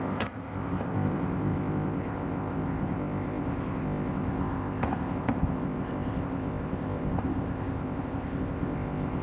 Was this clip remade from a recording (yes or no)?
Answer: yes